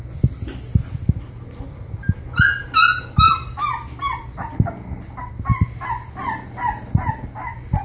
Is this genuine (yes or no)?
yes